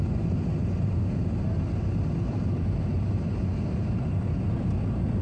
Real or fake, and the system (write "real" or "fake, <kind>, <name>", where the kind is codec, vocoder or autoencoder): real